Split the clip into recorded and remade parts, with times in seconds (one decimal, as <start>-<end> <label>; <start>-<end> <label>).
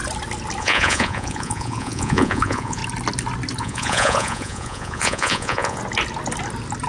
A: 0.0-0.6 recorded; 0.6-2.8 remade; 2.8-3.6 recorded; 3.6-5.8 remade; 5.8-6.9 recorded